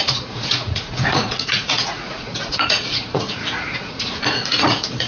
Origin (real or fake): fake